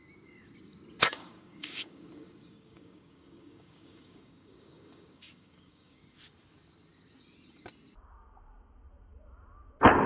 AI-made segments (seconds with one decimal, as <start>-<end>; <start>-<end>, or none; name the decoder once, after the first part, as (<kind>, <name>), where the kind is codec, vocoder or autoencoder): 1.1-6.0 (codec, DAC)